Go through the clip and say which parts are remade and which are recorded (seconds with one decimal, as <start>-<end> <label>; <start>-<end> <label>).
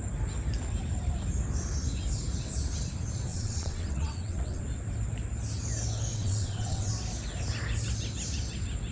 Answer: 0.0-3.3 recorded; 3.3-4.6 remade; 4.6-6.1 recorded; 6.1-6.9 remade; 6.9-8.9 recorded